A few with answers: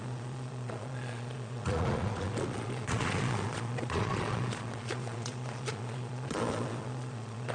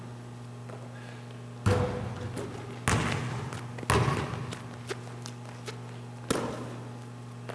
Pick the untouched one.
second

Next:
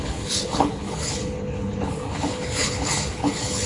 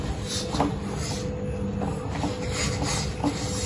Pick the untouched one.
second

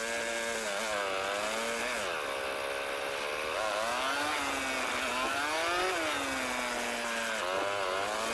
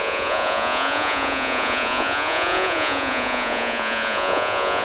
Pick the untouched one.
first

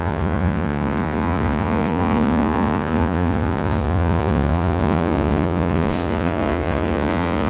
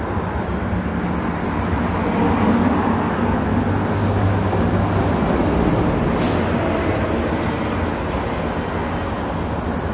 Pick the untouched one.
second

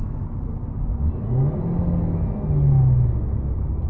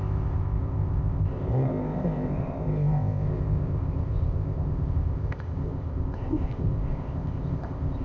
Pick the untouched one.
first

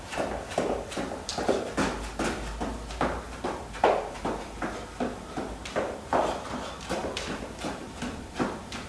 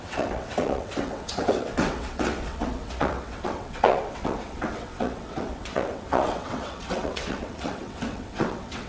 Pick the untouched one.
first